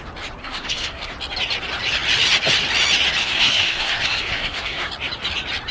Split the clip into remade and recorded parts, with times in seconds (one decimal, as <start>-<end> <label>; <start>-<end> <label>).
0.0-0.4 recorded; 0.4-1.1 remade; 1.1-3.2 recorded; 3.2-4.9 remade; 4.9-5.7 recorded